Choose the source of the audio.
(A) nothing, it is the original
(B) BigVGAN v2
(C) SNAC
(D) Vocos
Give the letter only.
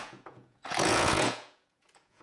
D